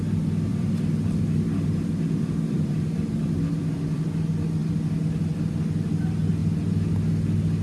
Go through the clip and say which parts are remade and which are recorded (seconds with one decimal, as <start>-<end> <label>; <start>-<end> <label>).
0.0-0.5 recorded; 0.5-4.1 remade; 4.1-7.6 recorded